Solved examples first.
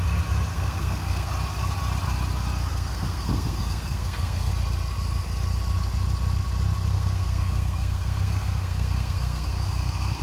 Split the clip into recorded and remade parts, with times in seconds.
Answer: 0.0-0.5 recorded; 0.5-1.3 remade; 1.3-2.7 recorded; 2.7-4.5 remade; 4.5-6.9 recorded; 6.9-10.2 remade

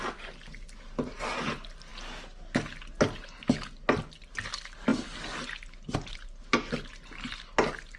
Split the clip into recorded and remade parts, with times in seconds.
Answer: 0.0-8.0 recorded

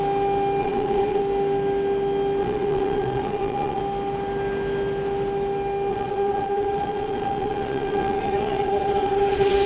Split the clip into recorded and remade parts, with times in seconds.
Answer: 0.0-0.6 recorded; 0.6-1.2 remade; 1.2-2.4 recorded; 2.4-3.8 remade; 3.8-5.9 recorded; 5.9-9.7 remade

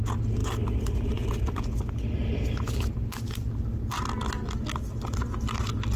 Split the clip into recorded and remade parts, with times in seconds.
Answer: 0.0-6.0 recorded

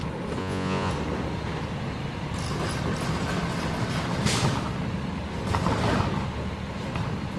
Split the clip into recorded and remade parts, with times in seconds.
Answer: 0.0-0.4 recorded; 0.4-0.9 remade; 0.9-7.4 recorded

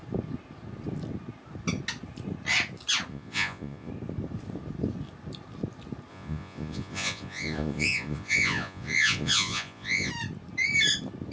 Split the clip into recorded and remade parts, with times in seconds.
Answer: 0.0-3.1 recorded; 3.1-3.9 remade; 3.9-6.1 recorded; 6.1-10.1 remade; 10.1-11.3 recorded